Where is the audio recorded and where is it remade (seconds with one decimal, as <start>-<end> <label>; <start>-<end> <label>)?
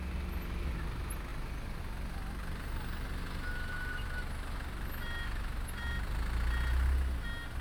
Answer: 0.0-7.6 recorded